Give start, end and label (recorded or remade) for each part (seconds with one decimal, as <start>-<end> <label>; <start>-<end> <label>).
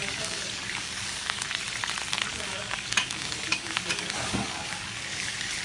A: 0.0-1.5 remade; 1.5-2.3 recorded; 2.3-5.6 remade